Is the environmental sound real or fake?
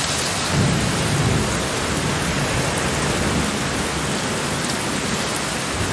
real